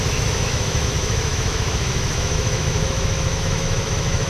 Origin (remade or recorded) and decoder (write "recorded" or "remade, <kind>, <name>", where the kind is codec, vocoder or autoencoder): remade, autoencoder, DAC-VAE